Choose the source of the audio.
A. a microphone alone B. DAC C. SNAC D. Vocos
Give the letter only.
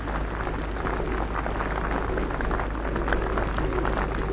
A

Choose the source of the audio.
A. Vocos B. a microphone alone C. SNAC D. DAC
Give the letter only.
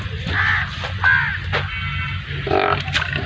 B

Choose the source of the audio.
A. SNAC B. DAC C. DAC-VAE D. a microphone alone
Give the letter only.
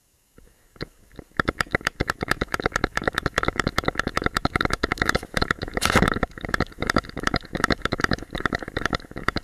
B